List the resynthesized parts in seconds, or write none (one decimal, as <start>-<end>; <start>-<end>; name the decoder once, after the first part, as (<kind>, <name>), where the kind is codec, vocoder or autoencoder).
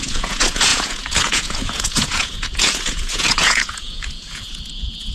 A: 0.0-5.1 (vocoder, Vocos)